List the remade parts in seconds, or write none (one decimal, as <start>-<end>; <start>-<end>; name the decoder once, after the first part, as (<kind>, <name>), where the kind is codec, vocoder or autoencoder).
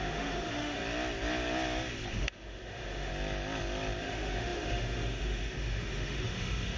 0.0-0.8 (autoencoder, DAC-VAE); 2.1-3.1; 4.0-6.8